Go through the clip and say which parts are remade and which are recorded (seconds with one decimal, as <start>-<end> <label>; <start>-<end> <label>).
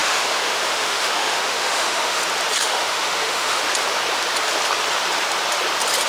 0.0-2.2 remade; 2.2-2.6 recorded; 2.6-3.6 remade; 3.6-6.1 recorded